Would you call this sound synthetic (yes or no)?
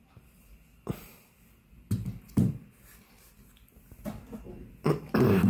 no